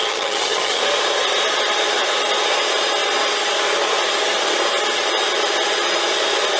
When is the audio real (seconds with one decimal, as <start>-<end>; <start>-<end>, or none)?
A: 0.8-6.6